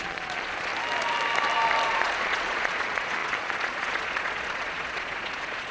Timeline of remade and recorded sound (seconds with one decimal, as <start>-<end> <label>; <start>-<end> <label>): 0.0-0.7 remade; 0.7-1.9 recorded; 1.9-5.7 remade

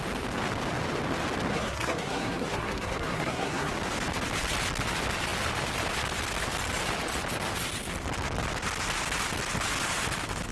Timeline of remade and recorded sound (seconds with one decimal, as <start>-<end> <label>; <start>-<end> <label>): 0.0-1.5 recorded; 1.5-3.7 remade; 3.7-10.5 recorded